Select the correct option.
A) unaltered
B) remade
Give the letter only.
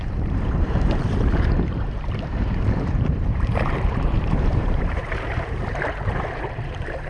B